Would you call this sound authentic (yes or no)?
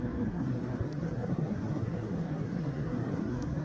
no